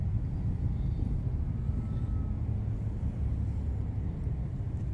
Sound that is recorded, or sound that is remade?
recorded